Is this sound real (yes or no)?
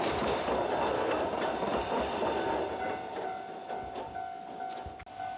yes